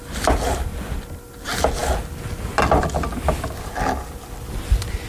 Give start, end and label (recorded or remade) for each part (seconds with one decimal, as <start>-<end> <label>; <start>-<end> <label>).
0.0-5.1 recorded